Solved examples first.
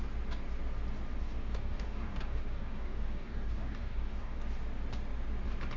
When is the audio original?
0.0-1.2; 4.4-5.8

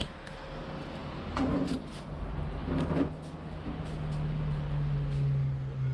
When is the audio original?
0.0-5.9

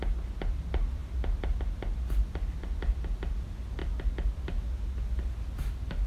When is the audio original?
0.0-6.1

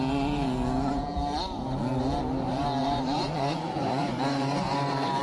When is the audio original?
0.0-2.8